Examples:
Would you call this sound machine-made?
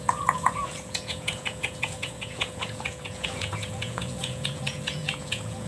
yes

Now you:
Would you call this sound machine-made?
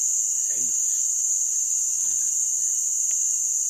no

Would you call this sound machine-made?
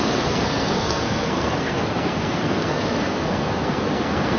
yes